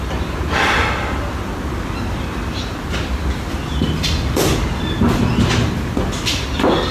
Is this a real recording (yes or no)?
yes